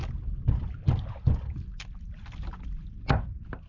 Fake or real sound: real